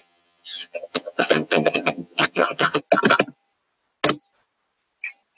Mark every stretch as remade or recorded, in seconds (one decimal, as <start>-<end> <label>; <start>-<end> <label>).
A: 0.0-2.8 remade; 2.8-5.4 recorded